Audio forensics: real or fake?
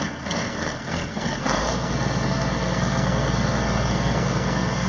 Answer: fake